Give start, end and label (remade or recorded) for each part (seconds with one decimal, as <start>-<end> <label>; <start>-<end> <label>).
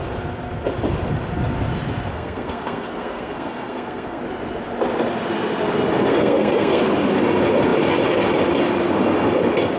0.0-2.1 recorded; 2.1-4.2 remade; 4.2-6.1 recorded; 6.1-6.8 remade; 6.8-9.8 recorded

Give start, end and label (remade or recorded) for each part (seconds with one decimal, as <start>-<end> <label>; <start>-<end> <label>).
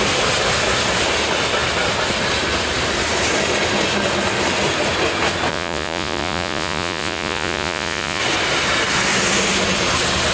0.0-5.5 recorded; 5.5-8.2 remade; 8.2-10.3 recorded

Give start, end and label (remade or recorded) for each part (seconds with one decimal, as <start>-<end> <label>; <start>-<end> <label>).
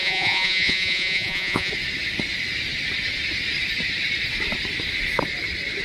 0.0-1.7 remade; 1.7-5.8 recorded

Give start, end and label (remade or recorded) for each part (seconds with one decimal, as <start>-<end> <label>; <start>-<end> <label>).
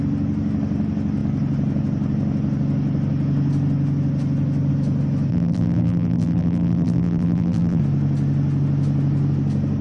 0.0-5.3 recorded; 5.3-7.8 remade; 7.8-9.8 recorded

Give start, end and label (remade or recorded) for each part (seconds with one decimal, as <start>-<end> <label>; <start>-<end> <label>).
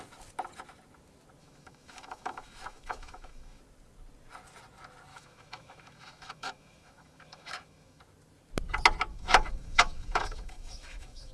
0.0-1.4 recorded; 1.4-3.6 remade; 3.6-5.1 recorded; 5.1-8.0 remade; 8.0-9.1 recorded; 9.1-11.3 remade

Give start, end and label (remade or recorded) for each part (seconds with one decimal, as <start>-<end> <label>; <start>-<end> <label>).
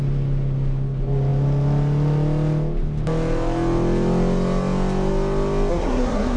0.0-5.7 recorded; 5.7-6.4 remade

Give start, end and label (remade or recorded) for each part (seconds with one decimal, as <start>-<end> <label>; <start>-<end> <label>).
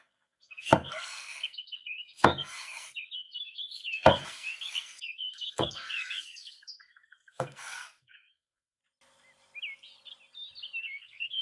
0.0-8.8 remade; 8.8-10.8 recorded; 10.8-11.4 remade